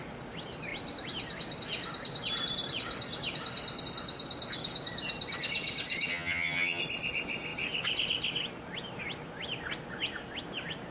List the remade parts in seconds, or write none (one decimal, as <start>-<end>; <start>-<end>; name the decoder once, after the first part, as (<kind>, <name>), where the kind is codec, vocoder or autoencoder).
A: 6.1-6.8 (vocoder, HiFi-GAN)